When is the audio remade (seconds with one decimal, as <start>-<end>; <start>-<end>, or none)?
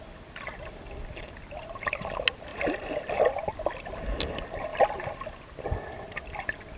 2.5-4.2